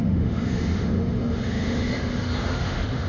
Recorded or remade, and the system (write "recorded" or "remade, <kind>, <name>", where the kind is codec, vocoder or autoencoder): remade, autoencoder, DAC-VAE